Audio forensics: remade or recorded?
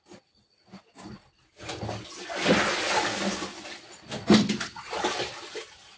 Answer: recorded